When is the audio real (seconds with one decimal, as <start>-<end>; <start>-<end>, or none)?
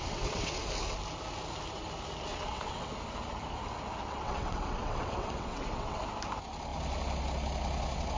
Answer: 0.5-2.3; 2.9-4.0; 6.0-8.2